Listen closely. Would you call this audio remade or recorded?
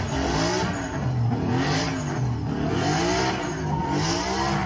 recorded